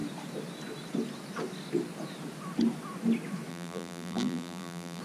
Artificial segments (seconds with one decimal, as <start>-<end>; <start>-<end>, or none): 3.5-5.0